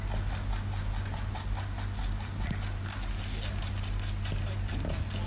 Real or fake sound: real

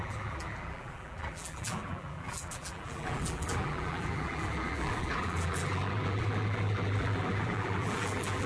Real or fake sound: fake